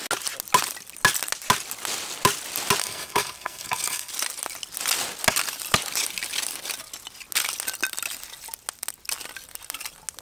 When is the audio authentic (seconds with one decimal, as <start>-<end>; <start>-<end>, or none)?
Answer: 0.0-2.8; 4.1-10.2